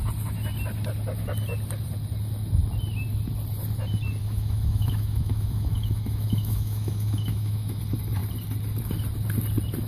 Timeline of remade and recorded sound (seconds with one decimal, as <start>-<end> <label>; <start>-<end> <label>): 0.0-4.2 recorded; 4.2-7.8 remade; 7.8-9.9 recorded